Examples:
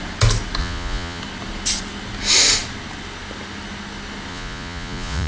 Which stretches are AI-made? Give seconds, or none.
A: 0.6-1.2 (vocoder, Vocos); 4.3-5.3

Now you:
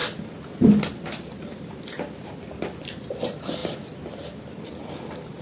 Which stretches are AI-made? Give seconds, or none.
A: none

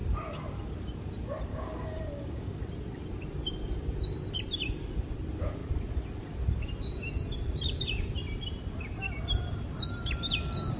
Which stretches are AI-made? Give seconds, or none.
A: 1.5-2.6 (codec, DAC)